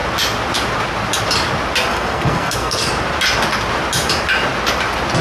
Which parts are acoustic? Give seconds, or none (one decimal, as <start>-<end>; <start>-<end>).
0.0-1.9; 2.9-5.2